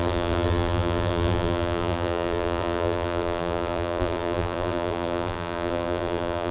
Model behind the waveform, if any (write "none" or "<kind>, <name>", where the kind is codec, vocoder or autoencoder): vocoder, BigVGAN v2